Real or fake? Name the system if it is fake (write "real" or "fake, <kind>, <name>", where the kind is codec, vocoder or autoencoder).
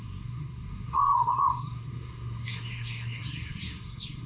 fake, codec, SNAC